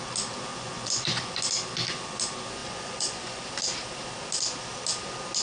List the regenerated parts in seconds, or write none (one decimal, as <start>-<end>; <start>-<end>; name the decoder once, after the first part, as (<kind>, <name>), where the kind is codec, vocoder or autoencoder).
0.5-1.4 (vocoder, Vocos); 2.6-3.5